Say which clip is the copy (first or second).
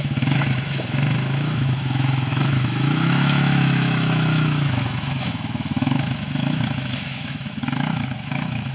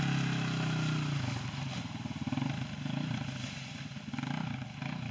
first